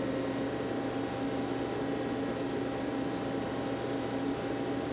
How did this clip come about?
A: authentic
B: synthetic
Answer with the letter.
A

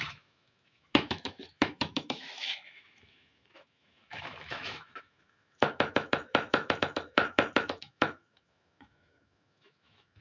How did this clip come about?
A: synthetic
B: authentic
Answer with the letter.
A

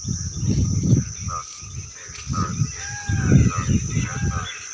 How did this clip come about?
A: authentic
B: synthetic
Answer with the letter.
A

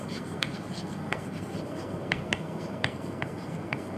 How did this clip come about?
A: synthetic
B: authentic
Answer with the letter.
A